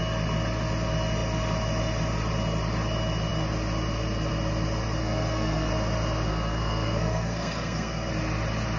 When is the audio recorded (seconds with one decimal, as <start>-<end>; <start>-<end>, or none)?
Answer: 0.0-5.0; 5.7-6.3; 8.1-8.8